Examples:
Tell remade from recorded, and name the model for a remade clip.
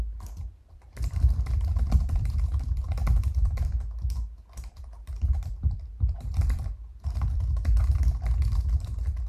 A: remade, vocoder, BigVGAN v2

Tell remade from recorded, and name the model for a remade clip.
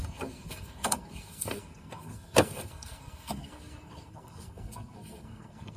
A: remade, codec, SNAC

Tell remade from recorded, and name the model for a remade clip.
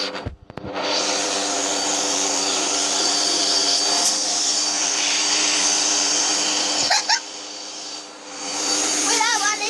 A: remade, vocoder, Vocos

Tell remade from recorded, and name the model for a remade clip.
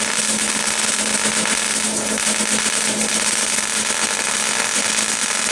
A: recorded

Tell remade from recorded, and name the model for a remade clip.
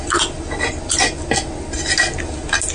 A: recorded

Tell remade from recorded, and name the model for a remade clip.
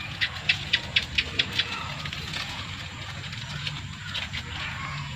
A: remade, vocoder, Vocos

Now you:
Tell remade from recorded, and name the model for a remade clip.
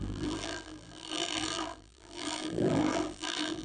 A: remade, vocoder, BigVGAN v2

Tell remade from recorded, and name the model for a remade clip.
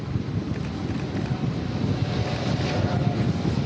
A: recorded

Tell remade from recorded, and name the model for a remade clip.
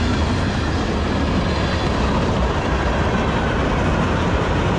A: recorded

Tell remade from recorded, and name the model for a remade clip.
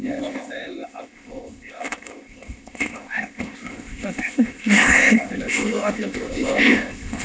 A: remade, codec, ZipCodec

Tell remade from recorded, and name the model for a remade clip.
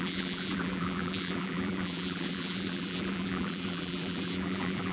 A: remade, vocoder, BigVGAN v2